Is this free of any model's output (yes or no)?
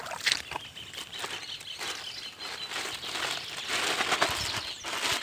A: yes